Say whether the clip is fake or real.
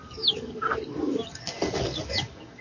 fake